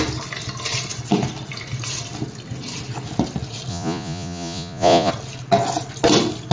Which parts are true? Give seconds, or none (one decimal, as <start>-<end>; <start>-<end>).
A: 0.0-3.7; 5.1-6.5